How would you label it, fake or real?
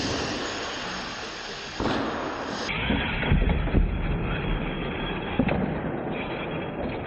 real